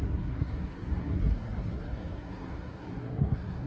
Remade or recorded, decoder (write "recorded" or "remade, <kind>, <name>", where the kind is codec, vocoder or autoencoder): remade, codec, SNAC